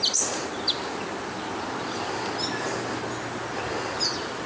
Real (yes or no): yes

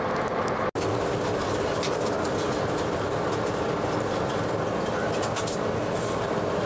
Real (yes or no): yes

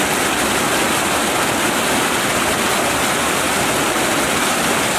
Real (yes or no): yes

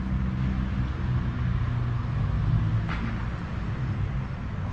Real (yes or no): yes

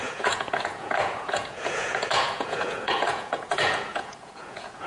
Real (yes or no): no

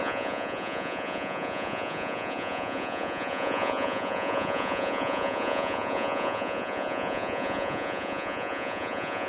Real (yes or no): no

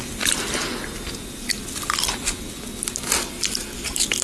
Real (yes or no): yes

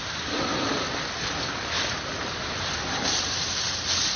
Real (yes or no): yes